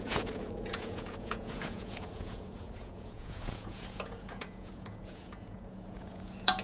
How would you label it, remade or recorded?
remade